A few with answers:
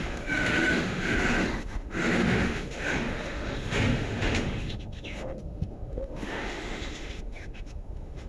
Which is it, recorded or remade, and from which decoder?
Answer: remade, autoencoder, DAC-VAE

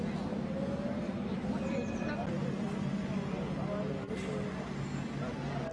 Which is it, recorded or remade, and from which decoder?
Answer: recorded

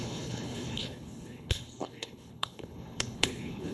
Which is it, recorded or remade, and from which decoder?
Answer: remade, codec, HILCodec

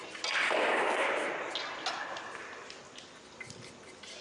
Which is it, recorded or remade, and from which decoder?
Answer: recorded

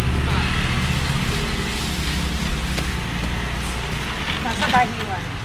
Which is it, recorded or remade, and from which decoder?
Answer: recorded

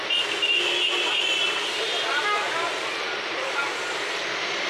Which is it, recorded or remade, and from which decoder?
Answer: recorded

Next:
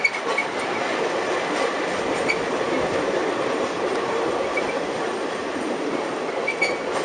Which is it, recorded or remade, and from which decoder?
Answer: recorded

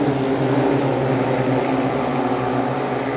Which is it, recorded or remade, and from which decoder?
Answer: recorded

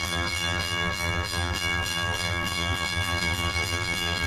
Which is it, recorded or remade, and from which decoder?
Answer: remade, vocoder, BigVGAN v2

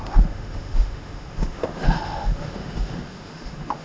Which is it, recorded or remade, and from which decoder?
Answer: remade, autoencoder, DAC-VAE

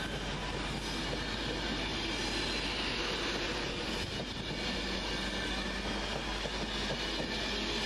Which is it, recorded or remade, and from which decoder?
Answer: recorded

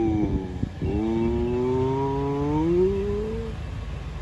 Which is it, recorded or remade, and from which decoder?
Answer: recorded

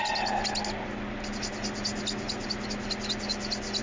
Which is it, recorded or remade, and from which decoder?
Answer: recorded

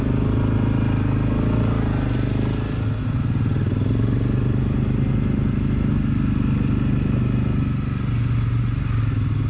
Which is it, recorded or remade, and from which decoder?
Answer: recorded